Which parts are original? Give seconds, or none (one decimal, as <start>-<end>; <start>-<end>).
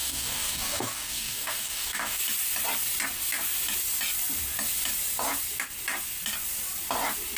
2.2-7.4